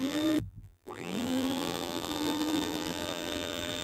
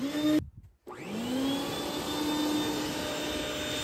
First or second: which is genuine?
second